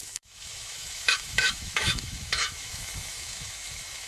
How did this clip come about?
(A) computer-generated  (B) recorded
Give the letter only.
A